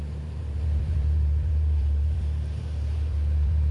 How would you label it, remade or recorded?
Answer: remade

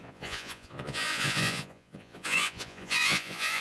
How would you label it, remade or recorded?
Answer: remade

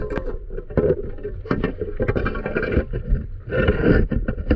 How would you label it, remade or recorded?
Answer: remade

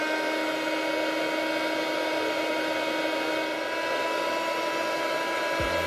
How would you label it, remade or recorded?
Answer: recorded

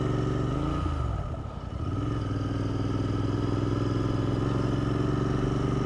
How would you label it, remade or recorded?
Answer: recorded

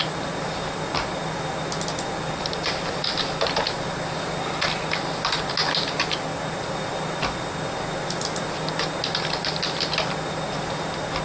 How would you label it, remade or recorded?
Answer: recorded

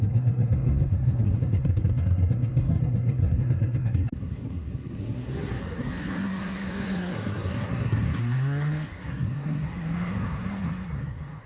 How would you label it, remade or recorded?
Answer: remade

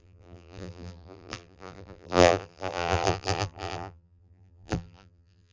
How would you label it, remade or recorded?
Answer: remade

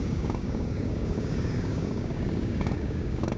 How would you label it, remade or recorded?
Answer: remade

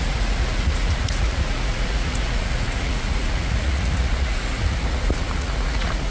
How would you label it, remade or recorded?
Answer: remade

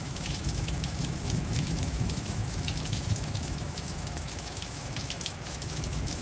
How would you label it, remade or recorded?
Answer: remade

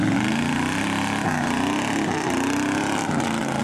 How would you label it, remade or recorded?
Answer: recorded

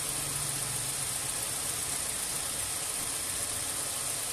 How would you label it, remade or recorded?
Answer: recorded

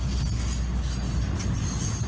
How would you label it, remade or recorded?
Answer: recorded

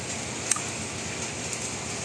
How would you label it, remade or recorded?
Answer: recorded